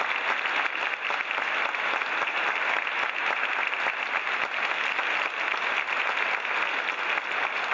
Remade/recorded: recorded